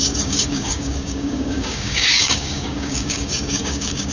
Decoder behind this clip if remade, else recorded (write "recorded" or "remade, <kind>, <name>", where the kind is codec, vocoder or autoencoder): remade, codec, DAC